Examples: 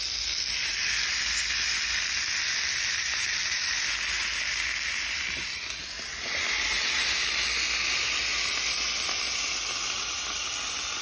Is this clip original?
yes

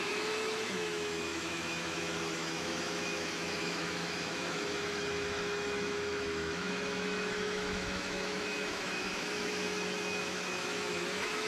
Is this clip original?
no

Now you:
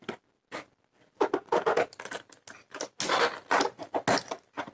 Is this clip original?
yes